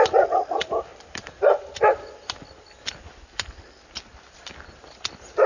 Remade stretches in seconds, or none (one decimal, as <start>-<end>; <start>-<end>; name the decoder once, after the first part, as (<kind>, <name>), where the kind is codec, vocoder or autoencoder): none